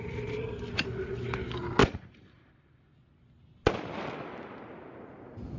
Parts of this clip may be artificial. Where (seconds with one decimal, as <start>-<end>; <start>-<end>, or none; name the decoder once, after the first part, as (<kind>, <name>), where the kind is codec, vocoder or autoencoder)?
1.8-2.5 (vocoder, BigVGAN v2)